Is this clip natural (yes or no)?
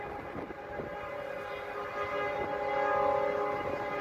yes